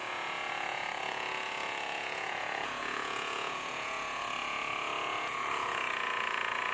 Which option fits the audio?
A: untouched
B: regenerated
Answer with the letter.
B